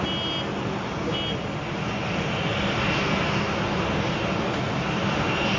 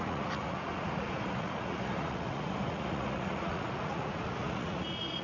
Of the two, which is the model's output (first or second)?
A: second